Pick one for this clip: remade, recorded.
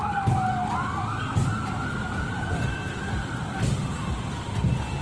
recorded